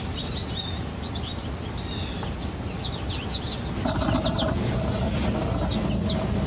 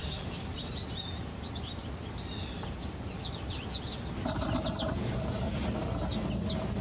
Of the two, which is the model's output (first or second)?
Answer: second